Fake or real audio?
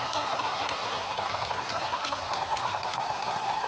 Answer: fake